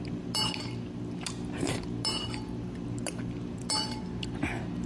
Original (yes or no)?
yes